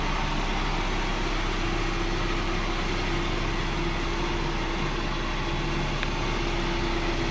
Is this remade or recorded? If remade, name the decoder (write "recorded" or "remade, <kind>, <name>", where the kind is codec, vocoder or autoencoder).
recorded